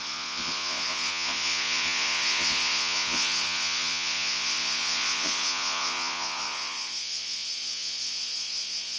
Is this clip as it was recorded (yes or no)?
no